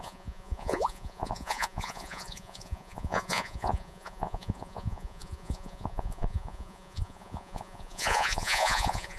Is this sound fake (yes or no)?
yes